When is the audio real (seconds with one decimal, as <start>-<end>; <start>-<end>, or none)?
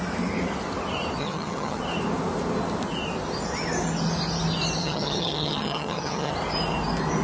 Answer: 0.0-1.2; 1.8-4.8; 6.3-7.2